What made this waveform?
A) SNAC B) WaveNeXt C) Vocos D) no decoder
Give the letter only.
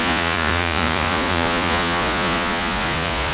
C